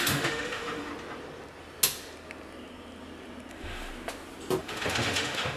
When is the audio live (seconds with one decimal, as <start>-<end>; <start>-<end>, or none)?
0.9-3.5; 3.9-4.6